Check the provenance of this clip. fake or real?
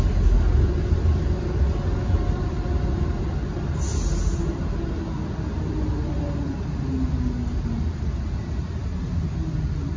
real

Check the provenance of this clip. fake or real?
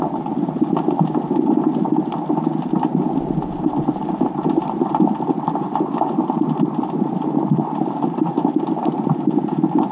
real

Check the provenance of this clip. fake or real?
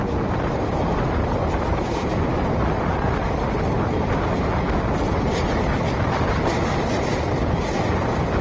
real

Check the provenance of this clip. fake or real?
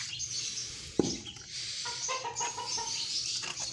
real